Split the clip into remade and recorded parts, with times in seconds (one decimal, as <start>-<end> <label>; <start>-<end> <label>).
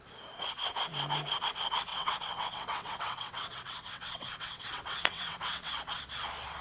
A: 0.0-1.9 recorded; 1.9-5.9 remade; 5.9-6.6 recorded